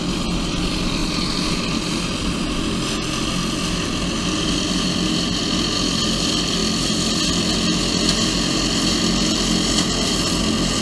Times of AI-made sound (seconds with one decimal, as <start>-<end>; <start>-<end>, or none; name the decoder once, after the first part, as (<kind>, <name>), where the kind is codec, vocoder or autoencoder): none